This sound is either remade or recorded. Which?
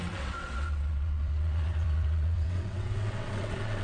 remade